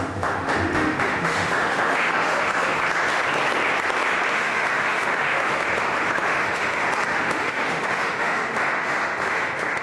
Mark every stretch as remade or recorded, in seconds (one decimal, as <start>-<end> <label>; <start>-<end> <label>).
0.0-2.8 remade; 2.8-4.3 recorded; 4.3-9.8 remade